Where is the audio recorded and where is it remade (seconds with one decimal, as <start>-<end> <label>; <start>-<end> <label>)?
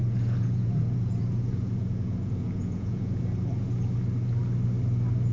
0.0-3.2 remade; 3.2-5.3 recorded